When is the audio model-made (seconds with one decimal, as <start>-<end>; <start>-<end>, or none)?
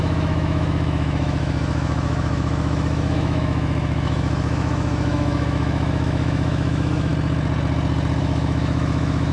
0.0-7.1; 8.2-9.3